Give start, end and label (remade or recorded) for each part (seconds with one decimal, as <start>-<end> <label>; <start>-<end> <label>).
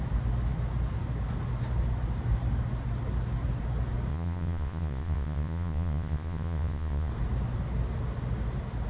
0.0-4.1 recorded; 4.1-7.1 remade; 7.1-8.9 recorded